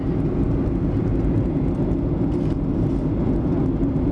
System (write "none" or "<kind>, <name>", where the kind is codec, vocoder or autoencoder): none